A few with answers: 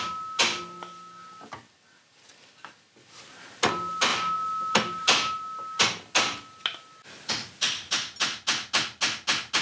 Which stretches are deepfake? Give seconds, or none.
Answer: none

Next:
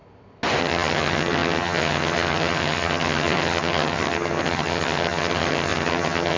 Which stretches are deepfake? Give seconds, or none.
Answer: 0.6-6.4 (vocoder, HiFi-GAN)

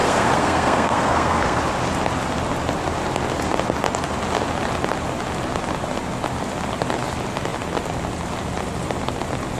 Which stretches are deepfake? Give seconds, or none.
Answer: 0.0-1.6 (codec, SNAC)

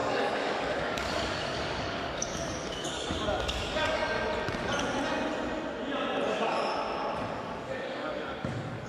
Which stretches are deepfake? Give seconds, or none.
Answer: 0.0-4.0 (codec, DAC); 6.3-6.7; 7.3-8.9

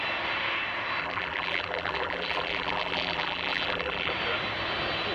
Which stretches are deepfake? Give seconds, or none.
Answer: 1.0-4.1 (vocoder, BigVGAN v2)

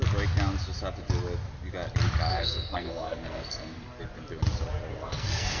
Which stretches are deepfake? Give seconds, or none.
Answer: 2.3-4.0 (codec, SNAC); 4.9-5.6